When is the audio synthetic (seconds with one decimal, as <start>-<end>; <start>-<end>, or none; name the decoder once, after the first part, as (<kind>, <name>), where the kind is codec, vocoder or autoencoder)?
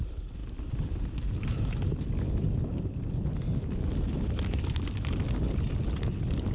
0.4-4.3 (vocoder, BigVGAN v2)